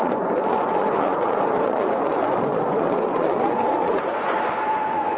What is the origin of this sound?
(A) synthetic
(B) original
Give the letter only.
A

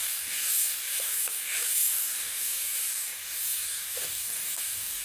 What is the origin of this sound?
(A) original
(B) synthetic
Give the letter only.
B